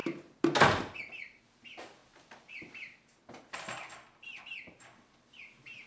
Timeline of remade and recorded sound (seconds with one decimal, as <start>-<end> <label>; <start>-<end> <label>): 0.0-5.9 recorded